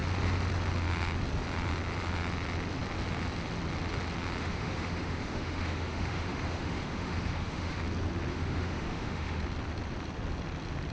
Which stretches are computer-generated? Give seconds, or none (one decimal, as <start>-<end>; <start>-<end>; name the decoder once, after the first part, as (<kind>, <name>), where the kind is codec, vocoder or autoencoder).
4.4-7.8 (autoencoder, DAC-VAE); 8.3-9.4